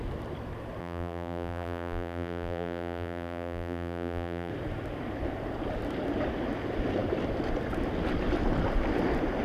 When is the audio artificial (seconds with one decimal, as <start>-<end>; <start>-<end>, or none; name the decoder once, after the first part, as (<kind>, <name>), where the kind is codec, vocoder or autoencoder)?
0.8-4.5 (vocoder, BigVGAN v2)